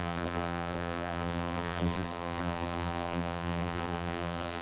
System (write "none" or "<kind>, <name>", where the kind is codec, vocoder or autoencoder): vocoder, BigVGAN v2